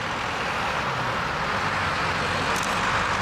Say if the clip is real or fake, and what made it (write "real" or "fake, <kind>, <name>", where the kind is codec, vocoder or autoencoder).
real